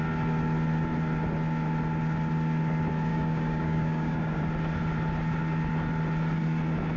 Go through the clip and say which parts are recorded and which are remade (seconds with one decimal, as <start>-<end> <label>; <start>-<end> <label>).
0.0-3.1 recorded; 3.1-4.4 remade; 4.4-7.0 recorded